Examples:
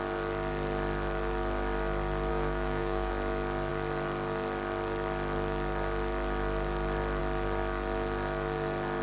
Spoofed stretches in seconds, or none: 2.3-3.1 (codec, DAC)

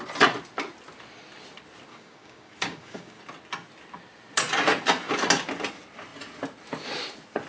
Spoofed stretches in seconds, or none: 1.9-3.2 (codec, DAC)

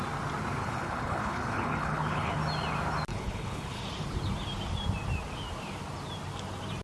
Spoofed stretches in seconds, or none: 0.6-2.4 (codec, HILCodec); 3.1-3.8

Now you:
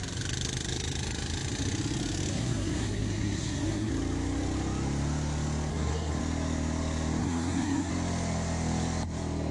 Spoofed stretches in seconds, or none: 2.3-3.9 (codec, SNAC); 5.7-6.2; 7.2-7.9

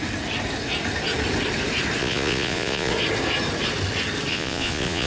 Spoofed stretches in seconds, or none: 2.0-2.9 (vocoder, Vocos); 4.3-5.1

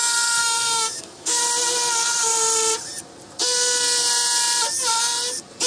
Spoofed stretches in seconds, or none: 0.4-1.4 (autoencoder, DAC-VAE)

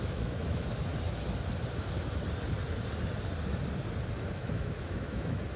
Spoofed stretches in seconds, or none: 0.0-0.9 (autoencoder, DAC-VAE); 4.3-5.6